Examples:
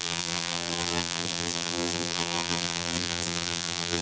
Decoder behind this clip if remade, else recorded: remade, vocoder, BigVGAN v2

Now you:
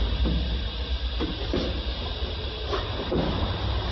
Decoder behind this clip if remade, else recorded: recorded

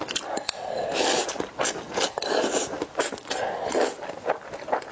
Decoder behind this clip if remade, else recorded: recorded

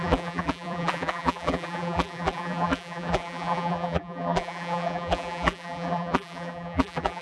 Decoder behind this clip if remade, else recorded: remade, vocoder, BigVGAN v2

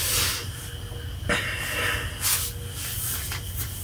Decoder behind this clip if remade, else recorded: recorded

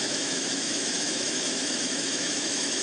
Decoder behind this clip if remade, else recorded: remade, autoencoder, DAC-VAE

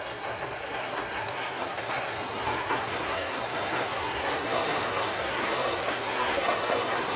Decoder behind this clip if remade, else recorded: remade, codec, SNAC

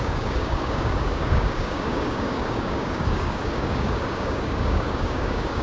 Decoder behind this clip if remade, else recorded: remade, codec, DAC